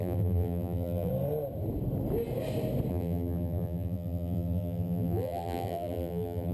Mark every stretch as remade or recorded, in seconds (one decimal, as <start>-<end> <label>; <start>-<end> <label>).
0.0-1.1 remade; 1.1-2.9 recorded; 2.9-6.5 remade